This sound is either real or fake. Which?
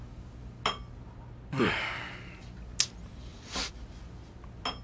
real